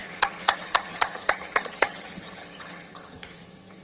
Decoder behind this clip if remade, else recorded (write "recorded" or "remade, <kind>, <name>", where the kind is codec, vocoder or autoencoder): remade, vocoder, HiFi-GAN